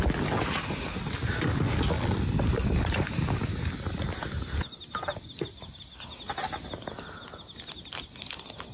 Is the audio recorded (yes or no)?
yes